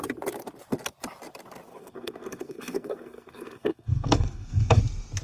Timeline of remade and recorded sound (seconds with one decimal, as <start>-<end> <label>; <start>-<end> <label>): 0.0-1.7 recorded; 1.7-4.8 remade; 4.8-5.2 recorded